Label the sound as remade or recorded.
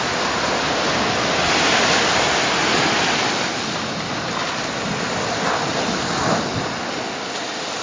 recorded